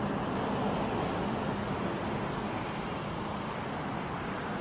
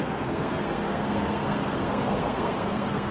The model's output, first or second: second